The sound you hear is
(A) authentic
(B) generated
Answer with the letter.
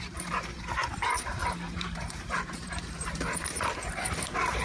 B